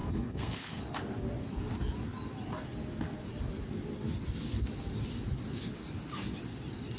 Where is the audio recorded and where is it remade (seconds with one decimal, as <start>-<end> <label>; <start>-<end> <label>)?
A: 0.0-0.8 remade; 0.8-7.0 recorded